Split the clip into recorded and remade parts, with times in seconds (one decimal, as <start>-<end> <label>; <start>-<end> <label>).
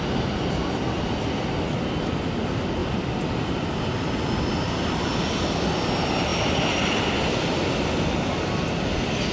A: 0.0-2.8 recorded; 2.8-3.7 remade; 3.7-6.3 recorded; 6.3-7.1 remade; 7.1-9.3 recorded